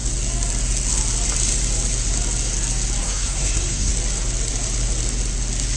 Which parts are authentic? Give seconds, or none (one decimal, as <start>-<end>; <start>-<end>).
0.0-3.0; 3.9-5.8